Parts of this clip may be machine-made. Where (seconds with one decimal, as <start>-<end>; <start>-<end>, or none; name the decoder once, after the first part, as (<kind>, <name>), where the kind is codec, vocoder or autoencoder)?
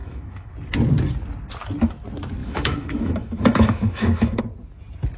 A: 0.0-0.5 (autoencoder, DAC-VAE); 2.4-4.4